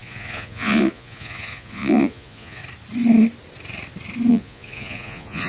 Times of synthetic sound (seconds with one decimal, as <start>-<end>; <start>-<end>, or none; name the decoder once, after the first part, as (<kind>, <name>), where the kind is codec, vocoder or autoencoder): 0.0-2.6 (vocoder, Vocos); 4.3-5.5